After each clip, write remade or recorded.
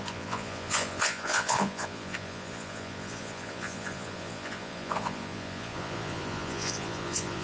remade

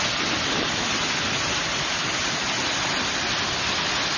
recorded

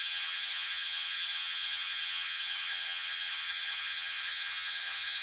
remade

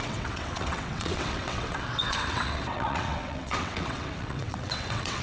remade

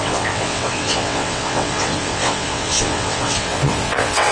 remade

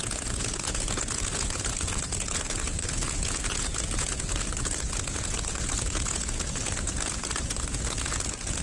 remade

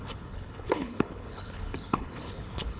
remade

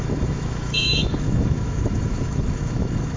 remade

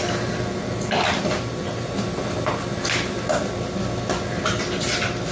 recorded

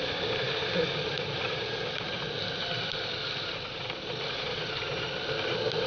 recorded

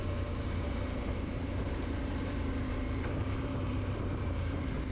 remade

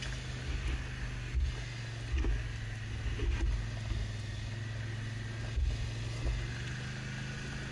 recorded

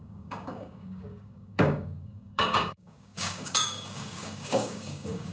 remade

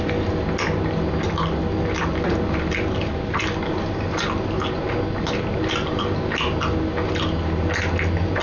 recorded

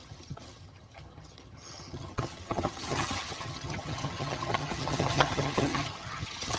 remade